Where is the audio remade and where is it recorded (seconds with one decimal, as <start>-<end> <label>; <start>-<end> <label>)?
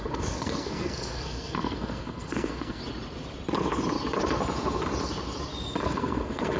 0.0-2.8 remade; 2.8-5.8 recorded; 5.8-6.6 remade